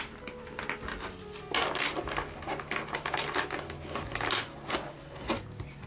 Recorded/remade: recorded